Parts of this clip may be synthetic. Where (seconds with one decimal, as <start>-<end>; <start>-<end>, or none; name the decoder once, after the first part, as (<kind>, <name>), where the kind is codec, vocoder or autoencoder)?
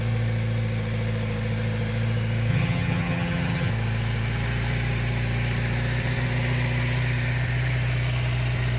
2.5-3.7 (vocoder, HiFi-GAN)